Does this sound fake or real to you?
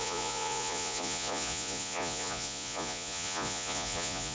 fake